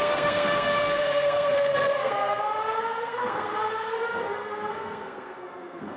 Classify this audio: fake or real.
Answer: fake